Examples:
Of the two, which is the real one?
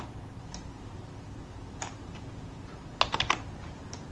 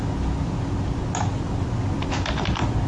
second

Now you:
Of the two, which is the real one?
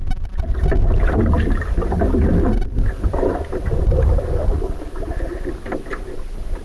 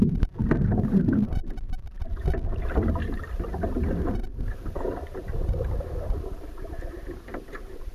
first